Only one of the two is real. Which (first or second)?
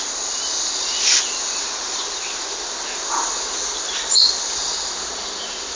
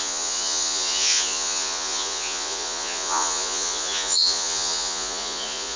first